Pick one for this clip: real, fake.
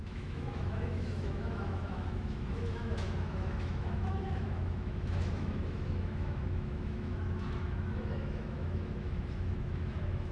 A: fake